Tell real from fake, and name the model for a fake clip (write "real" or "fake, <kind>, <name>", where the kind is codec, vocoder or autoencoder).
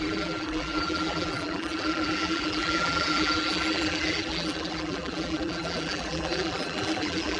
fake, vocoder, BigVGAN v2